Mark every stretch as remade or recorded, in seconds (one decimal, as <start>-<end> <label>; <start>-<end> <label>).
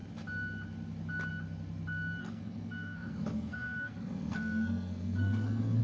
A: 0.0-2.2 recorded; 2.2-5.8 remade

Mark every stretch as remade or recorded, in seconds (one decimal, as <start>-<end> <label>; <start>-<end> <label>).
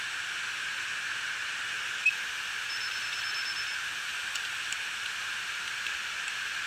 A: 0.0-1.4 recorded; 1.4-2.1 remade; 2.1-6.7 recorded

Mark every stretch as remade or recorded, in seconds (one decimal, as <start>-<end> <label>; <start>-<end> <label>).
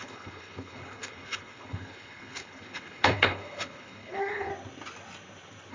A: 0.0-4.5 remade; 4.5-5.7 recorded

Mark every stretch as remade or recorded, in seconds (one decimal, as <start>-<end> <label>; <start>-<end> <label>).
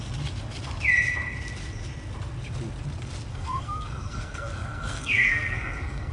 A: 0.0-3.3 recorded; 3.3-6.1 remade